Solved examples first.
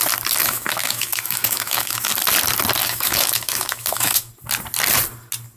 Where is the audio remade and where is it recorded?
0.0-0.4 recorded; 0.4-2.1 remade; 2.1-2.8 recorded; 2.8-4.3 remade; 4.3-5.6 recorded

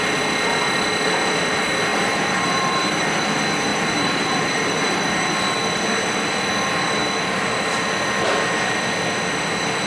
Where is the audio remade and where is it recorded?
0.0-1.9 recorded; 1.9-3.0 remade; 3.0-3.7 recorded; 3.7-5.3 remade; 5.3-7.0 recorded; 7.0-7.5 remade; 7.5-9.9 recorded

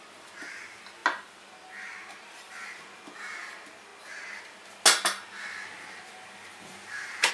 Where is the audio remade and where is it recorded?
0.0-6.5 recorded; 6.5-7.3 remade

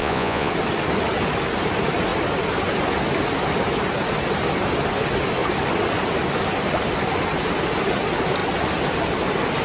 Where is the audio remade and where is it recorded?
0.0-0.5 remade; 0.5-9.6 recorded

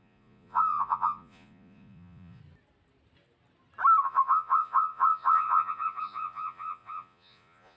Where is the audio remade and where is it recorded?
0.0-2.4 remade; 2.4-4.0 recorded; 4.0-7.8 remade

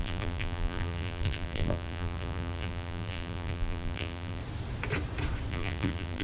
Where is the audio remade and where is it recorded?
0.0-4.4 remade; 4.4-5.5 recorded; 5.5-6.2 remade

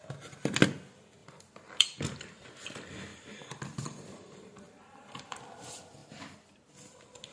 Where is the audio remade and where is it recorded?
0.0-1.2 recorded; 1.2-2.0 remade; 2.0-3.1 recorded; 3.1-5.4 remade; 5.4-7.3 recorded